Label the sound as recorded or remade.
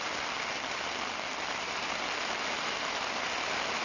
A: recorded